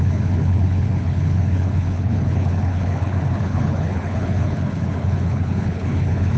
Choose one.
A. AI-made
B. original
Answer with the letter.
A